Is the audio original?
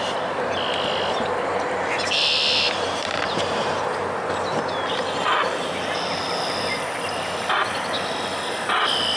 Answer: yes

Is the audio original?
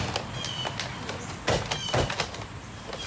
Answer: yes